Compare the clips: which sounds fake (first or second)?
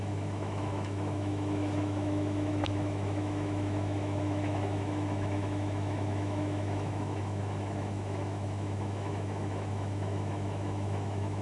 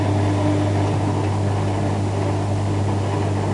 first